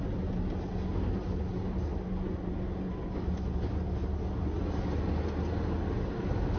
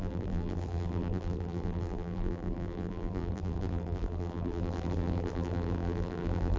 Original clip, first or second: first